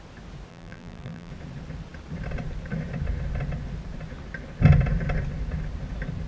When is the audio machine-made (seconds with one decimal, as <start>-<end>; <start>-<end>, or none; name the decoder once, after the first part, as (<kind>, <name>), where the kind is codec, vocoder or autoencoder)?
0.5-1.3 (vocoder, BigVGAN v2)